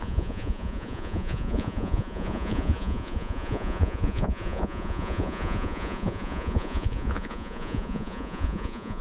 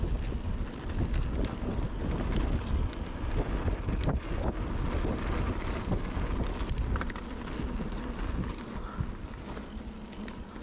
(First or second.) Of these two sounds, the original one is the second